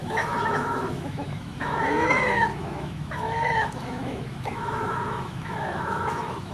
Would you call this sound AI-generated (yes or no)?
yes